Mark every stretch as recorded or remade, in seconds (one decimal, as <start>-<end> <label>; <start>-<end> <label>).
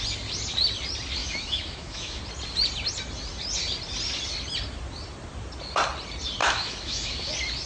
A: 0.0-1.2 recorded; 1.2-2.2 remade; 2.2-6.4 recorded; 6.4-7.3 remade; 7.3-7.7 recorded